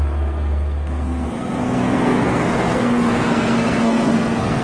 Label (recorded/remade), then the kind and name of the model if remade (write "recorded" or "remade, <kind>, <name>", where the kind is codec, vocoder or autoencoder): remade, codec, SNAC